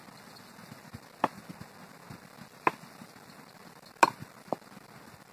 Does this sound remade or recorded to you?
recorded